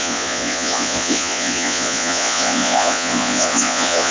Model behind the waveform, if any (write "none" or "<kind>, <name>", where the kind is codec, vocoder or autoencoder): vocoder, Vocos